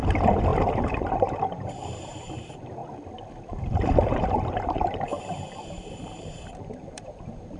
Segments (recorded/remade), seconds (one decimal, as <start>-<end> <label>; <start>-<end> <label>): 0.0-2.8 remade; 2.8-3.5 recorded; 3.5-5.1 remade; 5.1-5.7 recorded; 5.7-7.6 remade